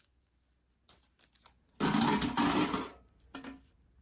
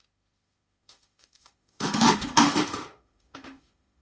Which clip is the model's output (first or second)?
second